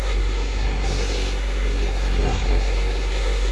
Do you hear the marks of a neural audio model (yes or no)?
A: yes